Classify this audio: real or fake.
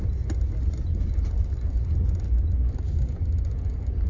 real